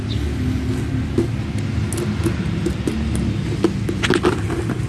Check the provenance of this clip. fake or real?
real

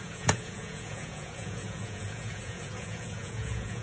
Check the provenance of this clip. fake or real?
fake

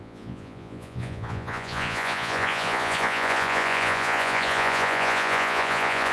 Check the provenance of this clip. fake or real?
fake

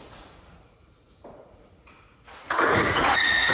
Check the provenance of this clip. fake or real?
fake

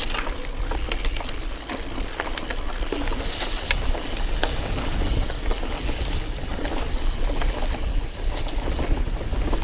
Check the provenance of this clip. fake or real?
real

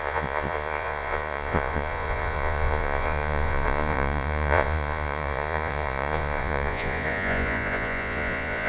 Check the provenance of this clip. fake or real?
fake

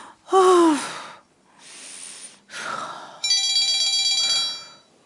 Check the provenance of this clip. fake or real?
real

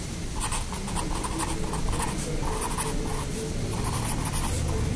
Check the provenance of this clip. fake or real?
real